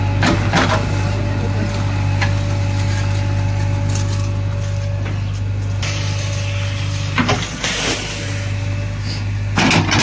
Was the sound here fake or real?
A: real